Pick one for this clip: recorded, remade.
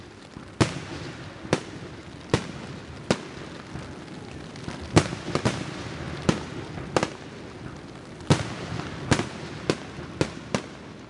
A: recorded